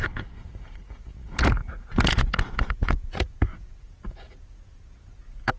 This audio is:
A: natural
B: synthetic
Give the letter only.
B